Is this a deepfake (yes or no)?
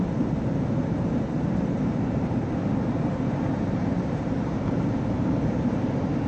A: yes